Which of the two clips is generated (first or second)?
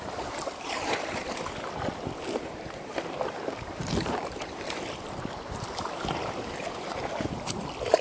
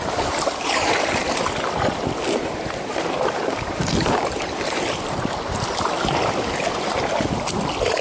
first